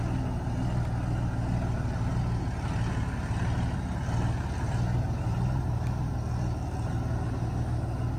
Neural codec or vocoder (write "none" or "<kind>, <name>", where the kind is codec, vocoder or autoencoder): none